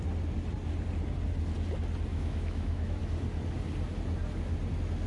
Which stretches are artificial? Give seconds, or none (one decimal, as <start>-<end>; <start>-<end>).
2.1-3.0